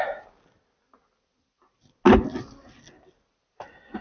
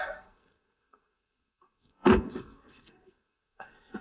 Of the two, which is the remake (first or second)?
second